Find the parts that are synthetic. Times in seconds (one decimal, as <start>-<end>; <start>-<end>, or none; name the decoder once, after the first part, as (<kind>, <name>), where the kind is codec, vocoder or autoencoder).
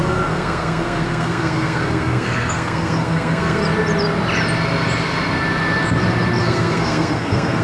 0.0-3.6 (codec, SNAC); 6.4-7.6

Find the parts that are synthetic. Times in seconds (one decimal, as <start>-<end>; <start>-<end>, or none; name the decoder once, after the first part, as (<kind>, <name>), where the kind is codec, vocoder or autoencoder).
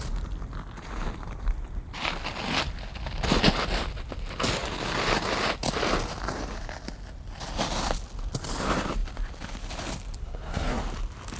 10.2-10.8 (codec, SNAC)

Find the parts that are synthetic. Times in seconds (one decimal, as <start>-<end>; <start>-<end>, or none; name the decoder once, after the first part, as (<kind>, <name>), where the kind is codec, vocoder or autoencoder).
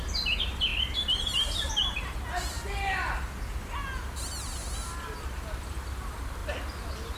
none